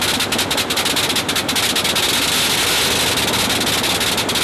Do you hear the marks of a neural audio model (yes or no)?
no